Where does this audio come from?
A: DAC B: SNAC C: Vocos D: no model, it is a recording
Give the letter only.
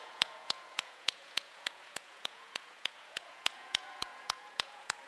C